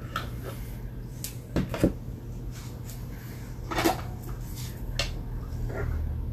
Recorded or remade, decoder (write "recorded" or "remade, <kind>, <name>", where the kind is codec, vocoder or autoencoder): recorded